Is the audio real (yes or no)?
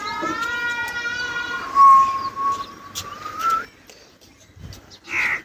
yes